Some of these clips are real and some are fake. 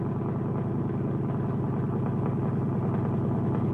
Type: real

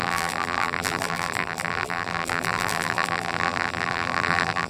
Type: fake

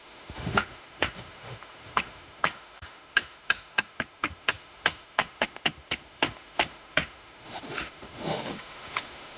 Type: fake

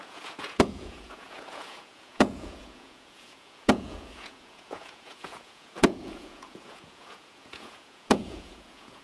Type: fake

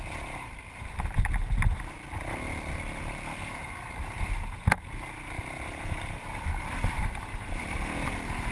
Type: real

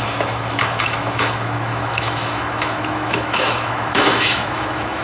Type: fake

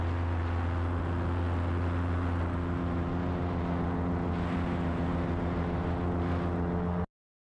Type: real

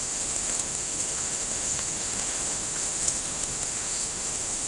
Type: fake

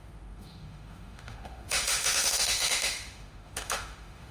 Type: fake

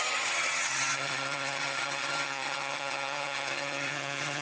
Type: fake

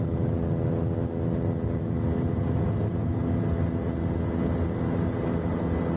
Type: real